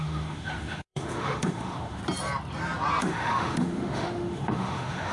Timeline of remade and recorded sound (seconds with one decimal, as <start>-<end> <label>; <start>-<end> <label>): 0.0-2.0 remade; 2.0-3.0 recorded; 3.0-5.1 remade